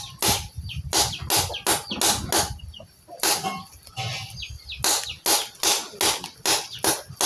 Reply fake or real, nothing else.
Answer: real